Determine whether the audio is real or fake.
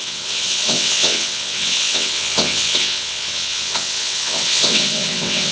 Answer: fake